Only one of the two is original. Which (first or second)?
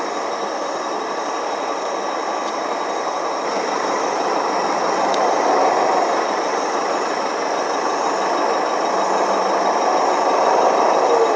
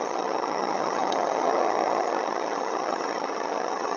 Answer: first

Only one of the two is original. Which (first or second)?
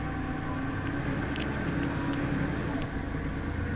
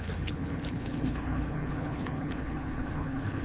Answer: first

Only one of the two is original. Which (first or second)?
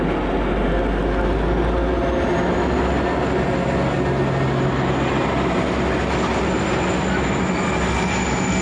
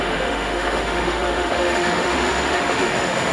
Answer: first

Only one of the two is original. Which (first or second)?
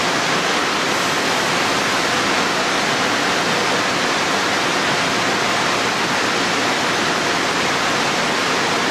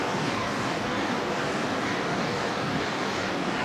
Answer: first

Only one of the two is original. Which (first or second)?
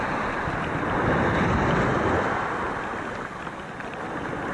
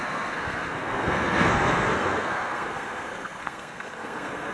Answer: first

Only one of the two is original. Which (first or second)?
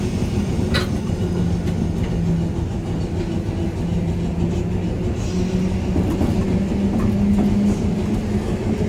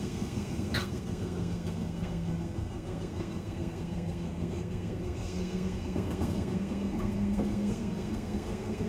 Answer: first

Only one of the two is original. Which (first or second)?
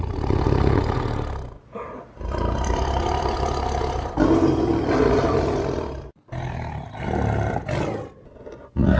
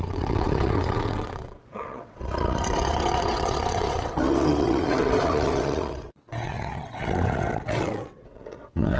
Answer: first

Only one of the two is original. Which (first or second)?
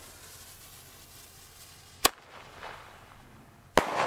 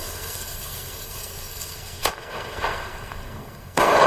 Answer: first